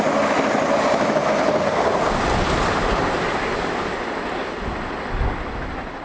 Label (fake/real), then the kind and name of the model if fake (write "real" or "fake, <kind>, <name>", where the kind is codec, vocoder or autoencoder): real